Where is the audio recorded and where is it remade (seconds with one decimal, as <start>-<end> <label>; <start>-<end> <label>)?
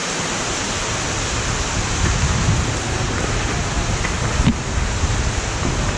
0.0-6.0 recorded